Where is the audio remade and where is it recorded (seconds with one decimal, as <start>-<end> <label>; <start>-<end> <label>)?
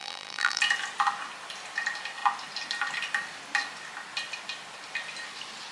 0.0-0.6 remade; 0.6-5.7 recorded